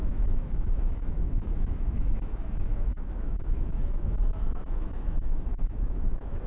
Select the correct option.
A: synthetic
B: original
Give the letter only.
A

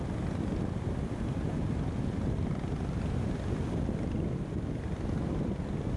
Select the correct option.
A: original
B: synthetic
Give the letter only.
A